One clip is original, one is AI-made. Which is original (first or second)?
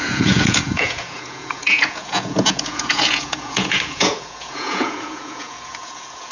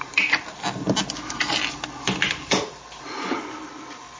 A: second